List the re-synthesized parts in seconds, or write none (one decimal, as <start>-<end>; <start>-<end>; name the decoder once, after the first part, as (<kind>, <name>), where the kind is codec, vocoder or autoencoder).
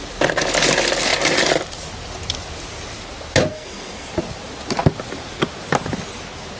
3.5-4.1 (codec, SNAC)